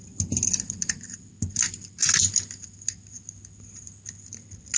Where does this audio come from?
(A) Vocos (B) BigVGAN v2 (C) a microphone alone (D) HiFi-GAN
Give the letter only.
C